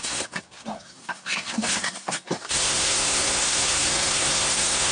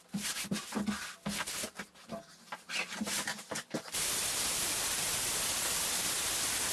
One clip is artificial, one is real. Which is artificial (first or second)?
first